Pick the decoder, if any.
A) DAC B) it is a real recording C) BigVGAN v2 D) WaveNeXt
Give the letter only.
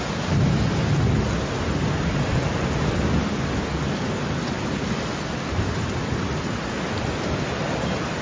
B